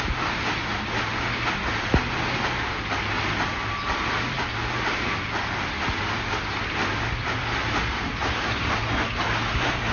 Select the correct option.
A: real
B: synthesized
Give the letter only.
A